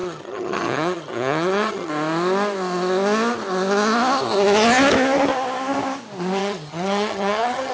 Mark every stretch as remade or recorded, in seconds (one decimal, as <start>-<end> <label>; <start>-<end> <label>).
0.0-1.9 remade; 1.9-6.4 recorded; 6.4-7.7 remade